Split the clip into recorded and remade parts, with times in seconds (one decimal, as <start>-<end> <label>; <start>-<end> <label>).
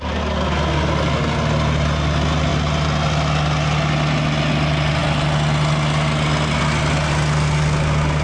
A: 0.0-8.2 recorded